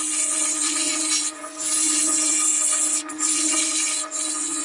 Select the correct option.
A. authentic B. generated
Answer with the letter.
B